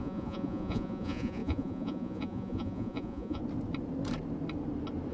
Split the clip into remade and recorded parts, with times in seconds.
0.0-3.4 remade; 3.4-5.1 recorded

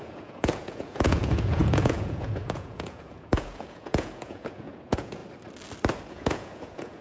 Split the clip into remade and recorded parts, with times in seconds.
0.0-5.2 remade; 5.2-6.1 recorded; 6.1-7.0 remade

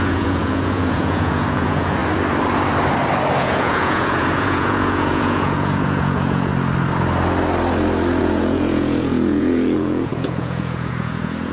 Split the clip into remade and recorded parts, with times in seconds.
0.0-2.0 remade; 2.0-3.4 recorded; 3.4-6.5 remade; 6.5-8.2 recorded; 8.2-11.5 remade